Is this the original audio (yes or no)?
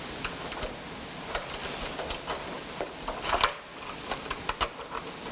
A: yes